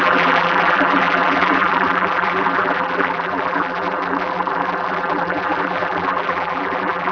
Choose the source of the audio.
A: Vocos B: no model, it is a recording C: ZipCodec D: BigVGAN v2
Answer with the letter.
D